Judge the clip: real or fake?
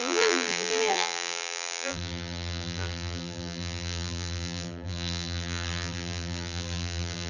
fake